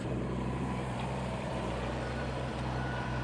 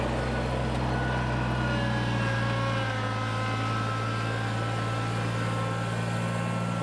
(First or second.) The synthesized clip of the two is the first